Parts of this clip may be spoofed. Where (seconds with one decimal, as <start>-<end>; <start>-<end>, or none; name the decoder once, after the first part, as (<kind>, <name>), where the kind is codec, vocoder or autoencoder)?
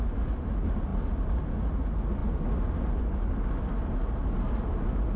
none